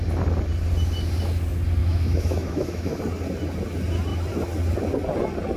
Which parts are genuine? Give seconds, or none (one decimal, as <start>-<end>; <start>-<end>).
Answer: 0.0-1.8; 3.0-5.6